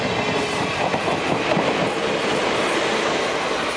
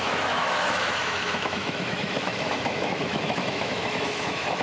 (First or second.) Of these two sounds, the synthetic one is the second